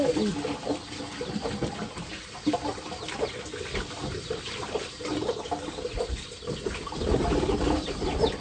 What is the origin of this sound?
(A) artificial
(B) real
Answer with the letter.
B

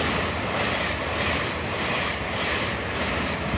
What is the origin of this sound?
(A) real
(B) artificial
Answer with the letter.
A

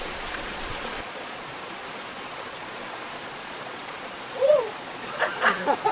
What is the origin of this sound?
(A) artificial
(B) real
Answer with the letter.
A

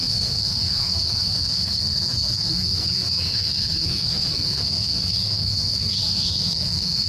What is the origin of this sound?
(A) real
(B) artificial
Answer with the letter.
B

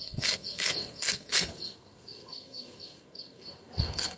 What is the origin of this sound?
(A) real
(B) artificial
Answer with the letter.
B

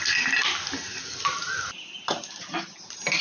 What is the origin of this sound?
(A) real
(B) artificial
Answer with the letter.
A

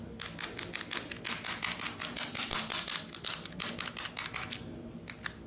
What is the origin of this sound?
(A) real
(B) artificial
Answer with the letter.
A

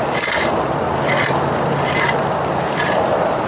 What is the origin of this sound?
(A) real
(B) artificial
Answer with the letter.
A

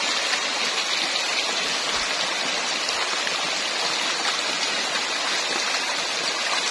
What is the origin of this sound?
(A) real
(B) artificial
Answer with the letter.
A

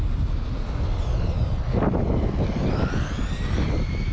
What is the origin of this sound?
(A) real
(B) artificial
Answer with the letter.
A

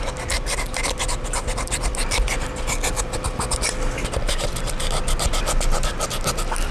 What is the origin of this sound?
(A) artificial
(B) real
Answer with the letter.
B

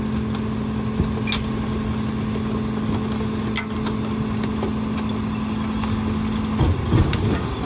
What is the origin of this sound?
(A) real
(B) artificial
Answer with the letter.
A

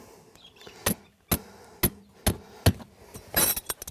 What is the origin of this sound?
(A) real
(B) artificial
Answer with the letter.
A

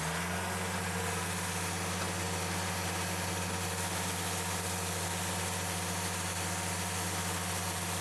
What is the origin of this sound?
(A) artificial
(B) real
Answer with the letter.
B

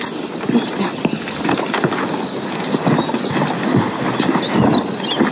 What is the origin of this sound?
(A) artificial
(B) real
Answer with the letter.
B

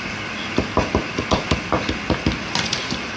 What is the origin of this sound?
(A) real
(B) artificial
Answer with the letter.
A